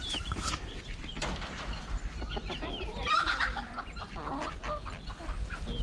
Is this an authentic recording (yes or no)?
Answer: no